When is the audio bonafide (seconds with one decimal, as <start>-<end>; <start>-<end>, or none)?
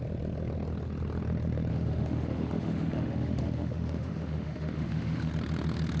0.0-1.7; 5.3-6.0